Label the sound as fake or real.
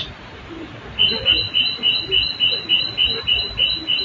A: real